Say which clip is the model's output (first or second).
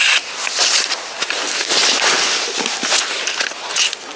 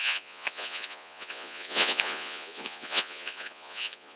second